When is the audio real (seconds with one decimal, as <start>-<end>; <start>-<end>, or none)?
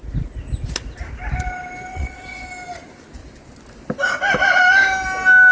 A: 0.0-1.9; 2.4-5.5